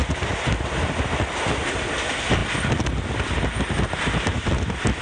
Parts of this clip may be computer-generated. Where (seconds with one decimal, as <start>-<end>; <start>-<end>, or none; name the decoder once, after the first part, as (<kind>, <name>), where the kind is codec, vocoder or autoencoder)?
none

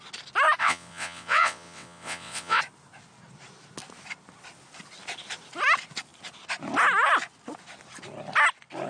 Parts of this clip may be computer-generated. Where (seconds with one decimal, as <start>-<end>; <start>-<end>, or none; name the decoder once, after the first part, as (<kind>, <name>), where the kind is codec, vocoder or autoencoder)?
0.6-2.6 (vocoder, WaveNeXt)

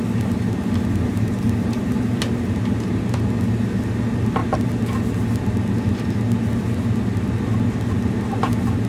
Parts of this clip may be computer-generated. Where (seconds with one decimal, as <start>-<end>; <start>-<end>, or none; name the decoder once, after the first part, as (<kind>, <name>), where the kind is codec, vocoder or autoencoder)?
1.1-3.2 (vocoder, BigVGAN v2)